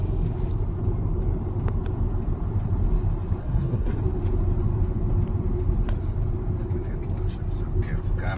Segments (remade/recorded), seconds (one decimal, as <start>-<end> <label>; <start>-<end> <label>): 0.0-3.4 recorded; 3.4-4.0 remade; 4.0-8.4 recorded